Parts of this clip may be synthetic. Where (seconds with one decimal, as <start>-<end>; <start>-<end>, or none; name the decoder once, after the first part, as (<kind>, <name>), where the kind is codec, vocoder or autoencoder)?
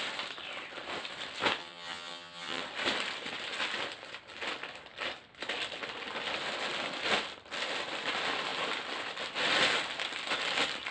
1.6-2.6 (vocoder, HiFi-GAN)